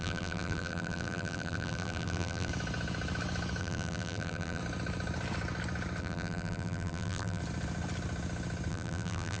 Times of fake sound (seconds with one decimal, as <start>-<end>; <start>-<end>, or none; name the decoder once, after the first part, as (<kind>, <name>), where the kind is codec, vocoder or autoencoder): 0.0-2.5 (vocoder, BigVGAN v2); 3.6-4.6; 6.0-7.4; 8.7-9.4